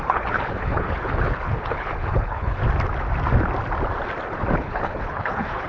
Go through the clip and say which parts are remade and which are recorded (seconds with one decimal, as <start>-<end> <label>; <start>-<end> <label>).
0.0-2.6 remade; 2.6-4.6 recorded; 4.6-5.7 remade